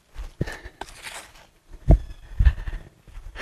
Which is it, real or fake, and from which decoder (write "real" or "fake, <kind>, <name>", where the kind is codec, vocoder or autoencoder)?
fake, vocoder, BigVGAN v2